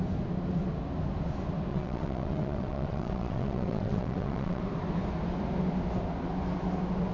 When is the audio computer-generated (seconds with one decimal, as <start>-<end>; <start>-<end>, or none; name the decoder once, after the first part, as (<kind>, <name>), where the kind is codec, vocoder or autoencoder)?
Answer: 1.7-4.6 (vocoder, WaveNeXt)